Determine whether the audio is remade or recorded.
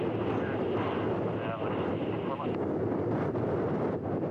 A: recorded